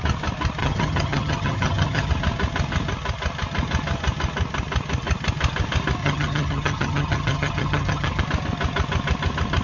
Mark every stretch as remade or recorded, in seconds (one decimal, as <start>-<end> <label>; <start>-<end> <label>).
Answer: 0.0-0.6 recorded; 0.6-2.1 remade; 2.1-6.0 recorded; 6.0-8.2 remade; 8.2-9.6 recorded